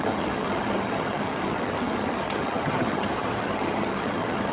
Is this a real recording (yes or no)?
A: no